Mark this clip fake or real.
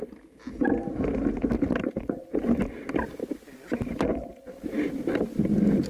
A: real